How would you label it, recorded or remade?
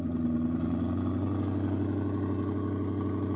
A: recorded